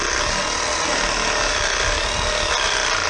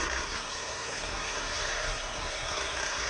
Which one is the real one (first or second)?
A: first